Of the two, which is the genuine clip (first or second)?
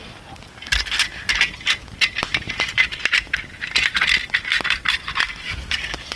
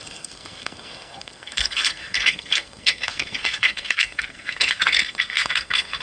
first